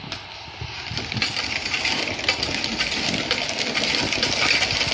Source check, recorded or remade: recorded